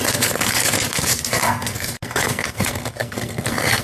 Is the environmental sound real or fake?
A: fake